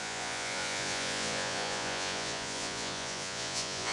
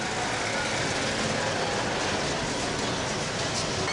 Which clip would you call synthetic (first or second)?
first